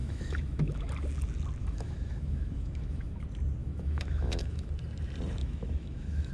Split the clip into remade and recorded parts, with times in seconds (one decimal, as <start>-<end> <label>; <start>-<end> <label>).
0.0-0.9 remade; 0.9-1.6 recorded; 1.6-3.2 remade; 3.2-3.6 recorded; 3.6-4.7 remade; 4.7-5.4 recorded; 5.4-6.3 remade